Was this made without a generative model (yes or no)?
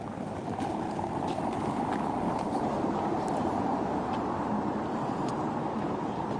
no